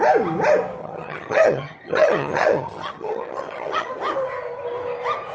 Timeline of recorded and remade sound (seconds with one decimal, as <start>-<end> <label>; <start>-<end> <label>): 0.0-0.8 recorded; 0.8-3.9 remade; 3.9-5.3 recorded